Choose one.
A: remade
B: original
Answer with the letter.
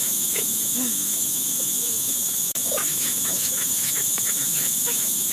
A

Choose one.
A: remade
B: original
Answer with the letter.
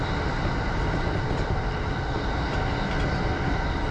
B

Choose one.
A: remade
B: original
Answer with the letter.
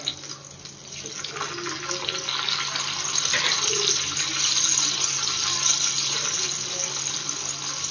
B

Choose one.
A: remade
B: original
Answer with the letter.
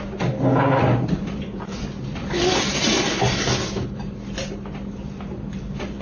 B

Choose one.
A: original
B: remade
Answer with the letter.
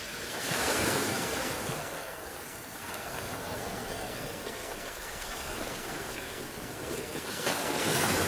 B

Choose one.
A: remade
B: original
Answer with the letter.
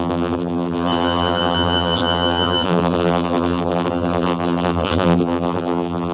A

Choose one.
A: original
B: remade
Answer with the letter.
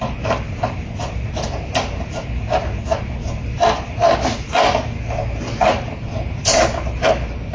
A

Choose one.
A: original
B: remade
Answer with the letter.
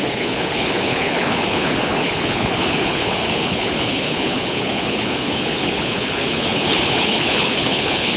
B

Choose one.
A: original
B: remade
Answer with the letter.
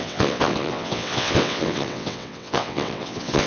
B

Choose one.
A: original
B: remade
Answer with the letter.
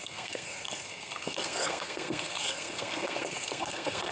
B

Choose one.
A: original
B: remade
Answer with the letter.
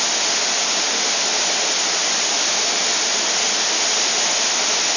A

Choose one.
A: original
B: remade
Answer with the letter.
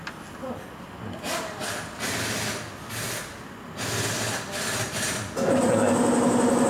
A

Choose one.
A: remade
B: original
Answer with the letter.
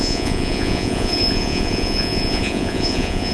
A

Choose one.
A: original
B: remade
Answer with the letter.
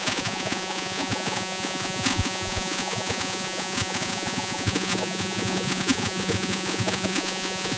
B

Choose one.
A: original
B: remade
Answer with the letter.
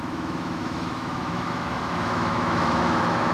B